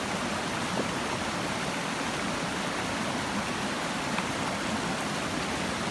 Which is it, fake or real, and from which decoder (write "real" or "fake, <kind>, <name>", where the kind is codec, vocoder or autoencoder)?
real